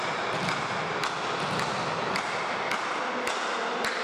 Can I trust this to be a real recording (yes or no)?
yes